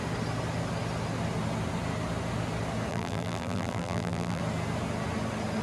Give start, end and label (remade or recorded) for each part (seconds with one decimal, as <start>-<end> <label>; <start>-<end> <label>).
0.0-2.9 recorded; 2.9-4.4 remade; 4.4-5.6 recorded

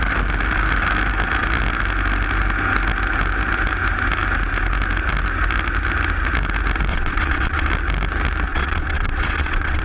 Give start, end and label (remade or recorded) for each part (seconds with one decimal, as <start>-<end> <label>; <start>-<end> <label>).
0.0-6.9 recorded; 6.9-7.7 remade; 7.7-8.5 recorded; 8.5-9.8 remade

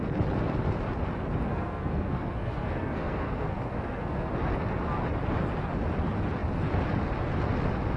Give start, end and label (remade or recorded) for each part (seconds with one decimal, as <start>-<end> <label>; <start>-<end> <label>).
0.0-1.5 recorded; 1.5-4.3 remade; 4.3-8.0 recorded

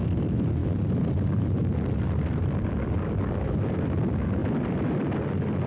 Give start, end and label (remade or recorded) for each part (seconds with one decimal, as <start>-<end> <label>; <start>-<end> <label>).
0.0-0.6 recorded; 0.6-3.8 remade; 3.8-4.4 recorded; 4.4-5.1 remade; 5.1-5.7 recorded

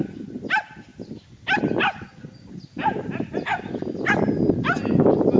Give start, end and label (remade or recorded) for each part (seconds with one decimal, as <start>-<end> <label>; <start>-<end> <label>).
0.0-5.4 recorded

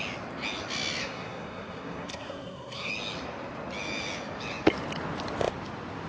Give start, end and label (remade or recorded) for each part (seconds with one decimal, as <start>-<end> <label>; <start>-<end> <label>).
0.0-1.0 recorded; 1.0-2.9 remade; 2.9-6.1 recorded

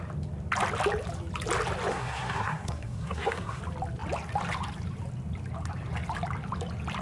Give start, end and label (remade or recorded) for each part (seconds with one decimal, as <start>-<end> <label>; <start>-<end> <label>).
0.0-1.9 recorded; 1.9-3.6 remade; 3.6-7.0 recorded